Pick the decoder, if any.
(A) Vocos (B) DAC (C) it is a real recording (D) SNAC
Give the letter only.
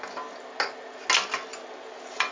C